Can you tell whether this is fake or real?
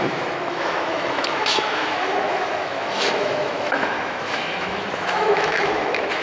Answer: fake